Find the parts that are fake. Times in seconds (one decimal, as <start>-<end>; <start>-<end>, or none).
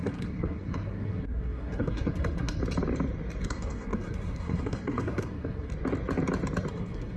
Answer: 0.0-2.6; 3.4-5.7; 6.7-7.2